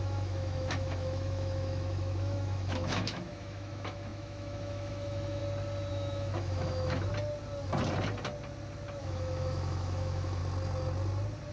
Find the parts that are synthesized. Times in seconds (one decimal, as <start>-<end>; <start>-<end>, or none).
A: 0.0-5.4; 5.9-7.1; 9.0-10.4